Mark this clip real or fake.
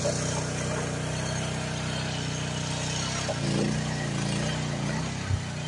real